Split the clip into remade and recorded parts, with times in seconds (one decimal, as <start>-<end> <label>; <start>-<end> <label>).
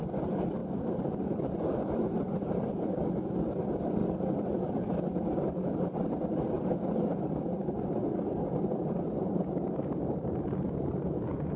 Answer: 0.0-0.6 recorded; 0.6-1.6 remade; 1.6-2.0 recorded; 2.0-3.1 remade; 3.1-11.6 recorded